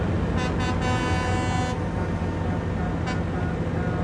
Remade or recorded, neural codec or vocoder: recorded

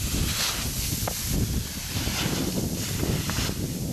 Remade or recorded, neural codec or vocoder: recorded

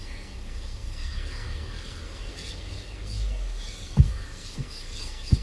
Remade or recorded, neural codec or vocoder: remade, codec, SNAC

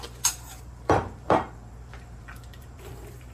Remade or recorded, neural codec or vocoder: remade, vocoder, BigVGAN v2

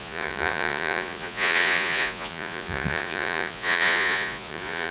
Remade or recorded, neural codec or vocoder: remade, vocoder, Vocos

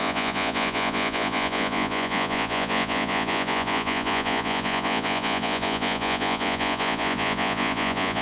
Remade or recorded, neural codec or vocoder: remade, vocoder, Vocos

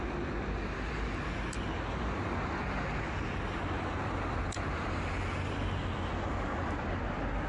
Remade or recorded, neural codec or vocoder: recorded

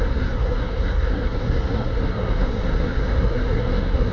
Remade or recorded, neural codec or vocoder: remade, codec, SNAC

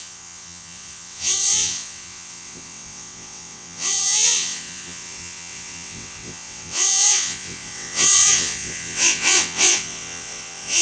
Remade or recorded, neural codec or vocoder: remade, vocoder, WaveNeXt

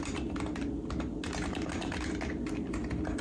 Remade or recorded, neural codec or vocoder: recorded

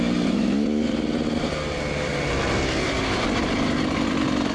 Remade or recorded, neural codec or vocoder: recorded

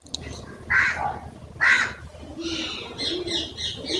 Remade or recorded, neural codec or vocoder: recorded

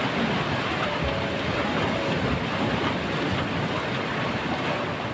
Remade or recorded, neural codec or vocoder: recorded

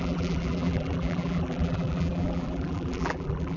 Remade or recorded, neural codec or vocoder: remade, vocoder, BigVGAN v2